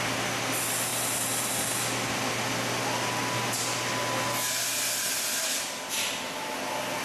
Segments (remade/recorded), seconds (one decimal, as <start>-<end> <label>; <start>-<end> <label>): 0.0-7.0 recorded